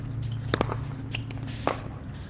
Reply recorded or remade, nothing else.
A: recorded